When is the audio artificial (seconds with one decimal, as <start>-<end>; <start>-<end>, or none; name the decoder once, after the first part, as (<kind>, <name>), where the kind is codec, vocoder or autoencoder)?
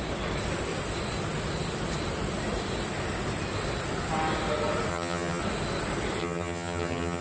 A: 4.9-5.4 (vocoder, HiFi-GAN); 6.2-7.2